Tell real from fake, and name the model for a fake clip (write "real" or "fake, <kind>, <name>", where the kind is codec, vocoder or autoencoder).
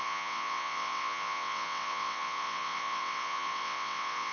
fake, vocoder, WaveNeXt